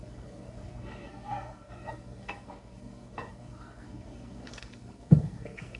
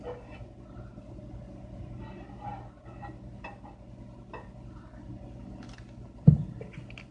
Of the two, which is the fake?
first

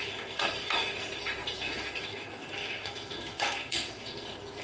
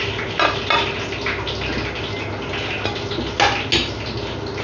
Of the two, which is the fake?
first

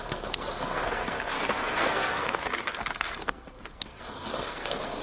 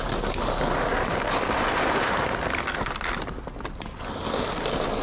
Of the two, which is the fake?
first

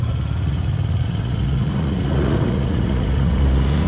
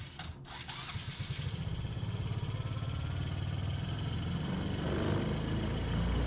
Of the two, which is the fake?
first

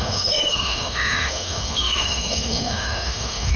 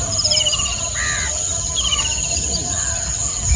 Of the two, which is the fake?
first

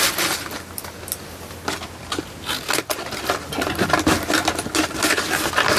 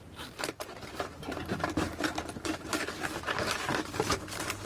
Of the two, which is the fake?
second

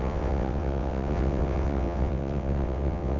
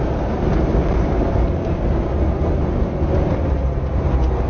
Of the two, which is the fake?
first